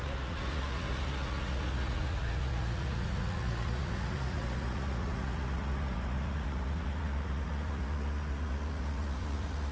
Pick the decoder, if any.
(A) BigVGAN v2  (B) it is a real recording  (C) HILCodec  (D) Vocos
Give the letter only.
D